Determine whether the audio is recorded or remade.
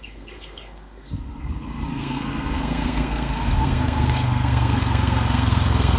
remade